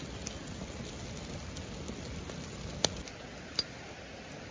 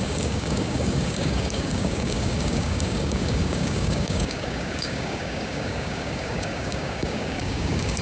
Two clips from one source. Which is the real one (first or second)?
first